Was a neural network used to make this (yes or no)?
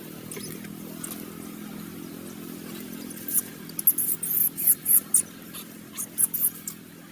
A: no